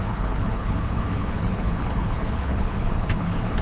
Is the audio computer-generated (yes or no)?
yes